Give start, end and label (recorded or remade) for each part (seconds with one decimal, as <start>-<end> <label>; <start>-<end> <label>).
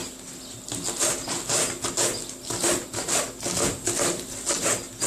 0.0-5.1 recorded